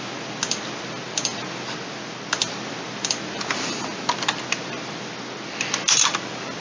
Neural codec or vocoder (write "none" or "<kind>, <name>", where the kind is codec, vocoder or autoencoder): none